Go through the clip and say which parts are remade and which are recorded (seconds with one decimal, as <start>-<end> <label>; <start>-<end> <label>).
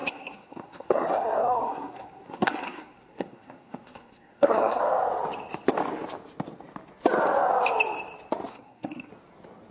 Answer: 0.0-4.8 remade; 4.8-8.5 recorded; 8.5-9.1 remade; 9.1-9.7 recorded